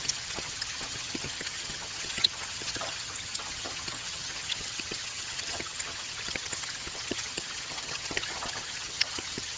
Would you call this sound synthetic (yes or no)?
yes